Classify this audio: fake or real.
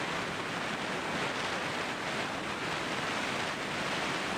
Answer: real